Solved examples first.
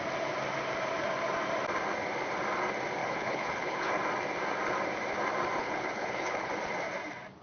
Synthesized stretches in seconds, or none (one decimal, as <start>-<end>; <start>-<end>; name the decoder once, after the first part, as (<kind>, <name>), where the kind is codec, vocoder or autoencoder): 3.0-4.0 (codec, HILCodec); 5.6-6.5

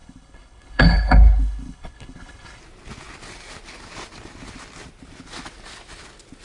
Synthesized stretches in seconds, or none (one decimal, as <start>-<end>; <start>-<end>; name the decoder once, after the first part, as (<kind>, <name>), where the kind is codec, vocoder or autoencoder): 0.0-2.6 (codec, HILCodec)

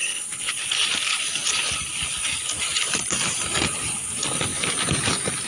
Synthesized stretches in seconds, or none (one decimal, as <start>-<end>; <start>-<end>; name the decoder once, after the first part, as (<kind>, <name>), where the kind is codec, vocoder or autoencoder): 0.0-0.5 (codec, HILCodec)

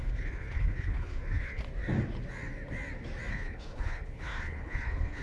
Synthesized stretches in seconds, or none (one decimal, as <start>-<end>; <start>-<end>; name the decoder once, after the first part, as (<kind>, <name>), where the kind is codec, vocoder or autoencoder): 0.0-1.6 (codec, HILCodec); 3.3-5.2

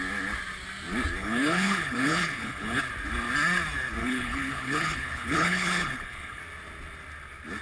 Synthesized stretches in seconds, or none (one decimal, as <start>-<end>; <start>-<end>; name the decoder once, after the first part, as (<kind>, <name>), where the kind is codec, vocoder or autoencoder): 1.2-2.8 (codec, HILCodec); 4.0-6.4

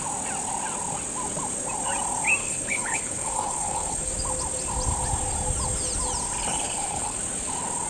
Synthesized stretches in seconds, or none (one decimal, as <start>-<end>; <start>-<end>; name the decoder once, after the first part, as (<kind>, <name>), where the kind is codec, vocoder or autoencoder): 2.4-4.1 (codec, HILCodec); 6.5-7.2